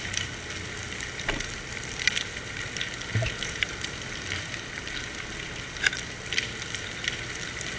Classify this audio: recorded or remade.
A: recorded